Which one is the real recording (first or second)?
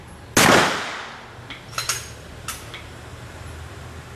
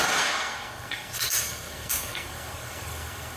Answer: first